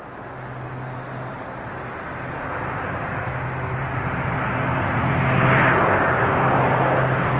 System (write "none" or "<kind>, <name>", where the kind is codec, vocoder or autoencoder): none